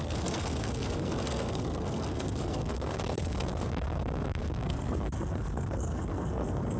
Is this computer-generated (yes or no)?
yes